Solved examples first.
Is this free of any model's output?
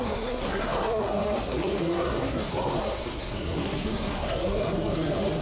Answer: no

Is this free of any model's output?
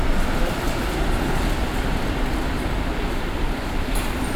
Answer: yes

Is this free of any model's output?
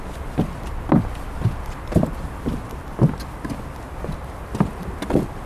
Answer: yes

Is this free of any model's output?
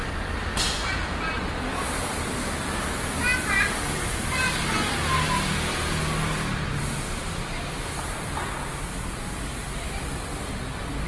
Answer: yes